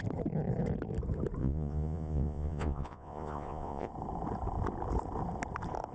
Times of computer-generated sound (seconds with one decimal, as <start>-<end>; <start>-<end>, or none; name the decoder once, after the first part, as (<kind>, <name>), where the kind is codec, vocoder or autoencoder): 1.4-3.9 (vocoder, Vocos)